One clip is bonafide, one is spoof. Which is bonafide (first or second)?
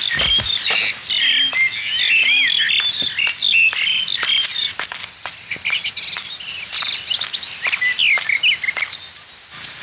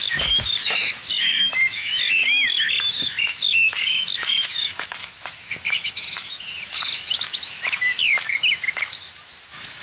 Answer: first